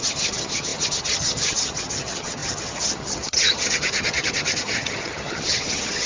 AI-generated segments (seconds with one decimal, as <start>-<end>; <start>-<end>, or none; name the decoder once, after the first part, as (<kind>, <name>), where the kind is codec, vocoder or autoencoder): 0.0-6.1 (vocoder, HiFi-GAN)